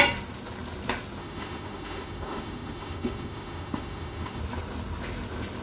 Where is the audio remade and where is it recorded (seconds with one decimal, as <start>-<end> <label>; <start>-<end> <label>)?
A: 0.0-1.2 recorded; 1.2-4.4 remade; 4.4-5.6 recorded